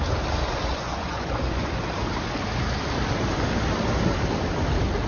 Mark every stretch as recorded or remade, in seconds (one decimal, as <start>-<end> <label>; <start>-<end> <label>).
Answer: 0.0-0.7 recorded; 0.7-1.8 remade; 1.8-5.1 recorded